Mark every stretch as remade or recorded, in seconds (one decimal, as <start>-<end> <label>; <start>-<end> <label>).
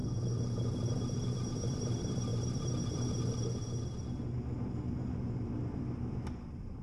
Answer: 0.0-0.6 recorded; 0.6-2.3 remade; 2.3-4.9 recorded; 4.9-6.8 remade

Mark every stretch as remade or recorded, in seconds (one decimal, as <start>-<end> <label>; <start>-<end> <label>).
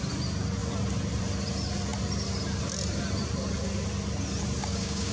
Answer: 0.0-4.6 recorded; 4.6-5.1 remade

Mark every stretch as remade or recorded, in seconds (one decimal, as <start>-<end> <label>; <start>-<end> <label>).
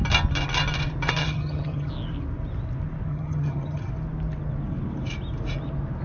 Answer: 0.0-1.2 recorded; 1.2-1.9 remade; 1.9-3.1 recorded; 3.1-3.9 remade; 3.9-6.0 recorded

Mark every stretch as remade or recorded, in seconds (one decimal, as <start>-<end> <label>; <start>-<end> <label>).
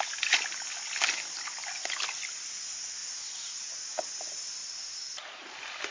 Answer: 0.0-5.9 recorded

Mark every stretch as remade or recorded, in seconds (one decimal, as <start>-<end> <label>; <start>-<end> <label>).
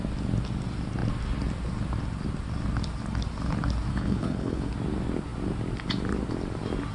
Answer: 0.0-3.9 recorded; 3.9-4.7 remade; 4.7-6.9 recorded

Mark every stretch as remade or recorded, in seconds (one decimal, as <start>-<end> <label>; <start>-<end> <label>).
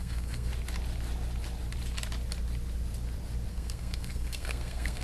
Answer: 0.0-0.5 remade; 0.5-3.5 recorded; 3.5-5.0 remade